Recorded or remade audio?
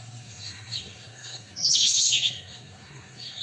remade